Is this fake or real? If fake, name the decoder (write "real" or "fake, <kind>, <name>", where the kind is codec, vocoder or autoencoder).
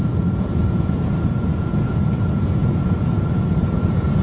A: fake, vocoder, Vocos